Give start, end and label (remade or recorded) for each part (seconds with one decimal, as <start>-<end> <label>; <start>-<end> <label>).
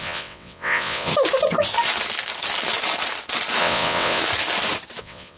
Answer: 0.0-1.1 remade; 1.1-3.6 recorded; 3.6-4.2 remade; 4.2-5.0 recorded; 5.0-5.4 remade